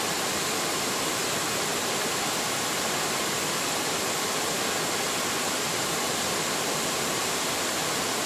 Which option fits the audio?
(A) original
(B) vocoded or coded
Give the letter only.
A